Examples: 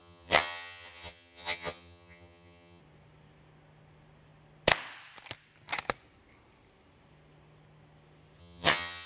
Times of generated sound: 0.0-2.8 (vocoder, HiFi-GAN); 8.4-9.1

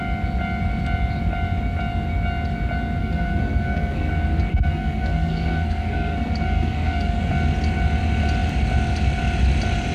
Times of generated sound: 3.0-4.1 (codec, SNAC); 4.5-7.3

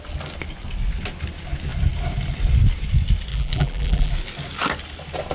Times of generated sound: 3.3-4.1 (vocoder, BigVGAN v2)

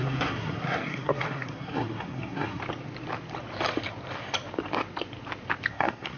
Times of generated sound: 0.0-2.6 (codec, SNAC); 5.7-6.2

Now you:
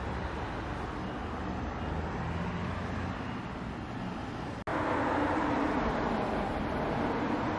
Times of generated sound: none